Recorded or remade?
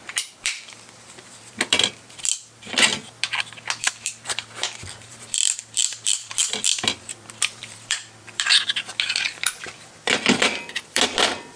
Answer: remade